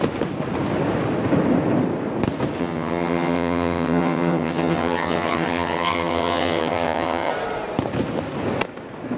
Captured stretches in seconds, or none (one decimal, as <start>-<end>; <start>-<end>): 0.0-2.6; 7.3-9.2